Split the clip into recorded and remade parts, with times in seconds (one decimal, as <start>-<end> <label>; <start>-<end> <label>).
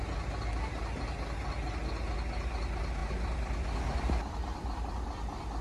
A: 0.0-3.0 recorded; 3.0-4.8 remade; 4.8-5.6 recorded